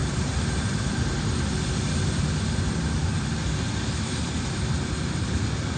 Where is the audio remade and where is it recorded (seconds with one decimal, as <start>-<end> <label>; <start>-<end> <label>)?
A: 0.0-5.8 recorded